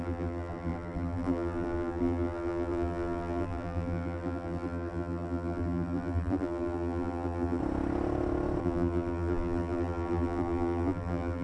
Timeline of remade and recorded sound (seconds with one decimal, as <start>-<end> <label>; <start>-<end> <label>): 0.0-7.6 remade; 7.6-8.6 recorded; 8.6-11.4 remade